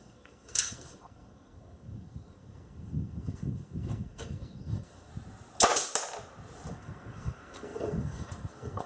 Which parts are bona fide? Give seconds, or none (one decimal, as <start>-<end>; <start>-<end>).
5.1-6.7